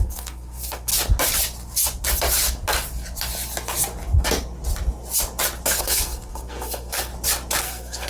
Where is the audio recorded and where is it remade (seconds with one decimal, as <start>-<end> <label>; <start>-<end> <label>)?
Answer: 0.0-0.9 remade; 0.9-5.8 recorded; 5.8-7.1 remade; 7.1-7.6 recorded; 7.6-8.1 remade